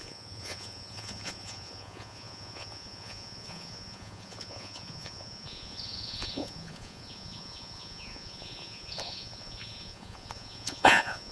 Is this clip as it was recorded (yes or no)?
no